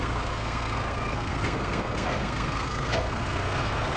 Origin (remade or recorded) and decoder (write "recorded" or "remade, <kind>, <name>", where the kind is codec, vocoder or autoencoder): remade, codec, SNAC